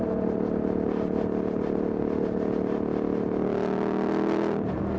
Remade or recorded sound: recorded